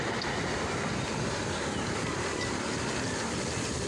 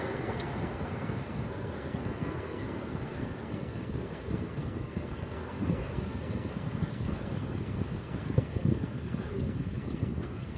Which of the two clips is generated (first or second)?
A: second